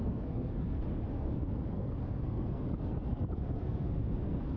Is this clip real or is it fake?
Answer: fake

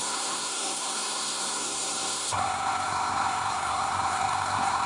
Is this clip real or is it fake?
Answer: fake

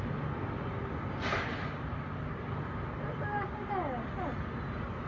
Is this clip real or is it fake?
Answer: real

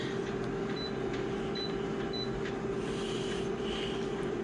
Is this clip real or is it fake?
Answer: real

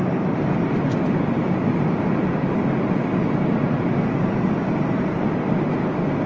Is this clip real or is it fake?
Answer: real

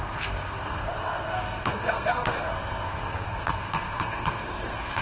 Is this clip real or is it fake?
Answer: fake